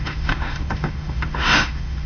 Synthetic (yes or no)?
yes